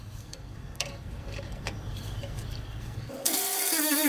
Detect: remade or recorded remade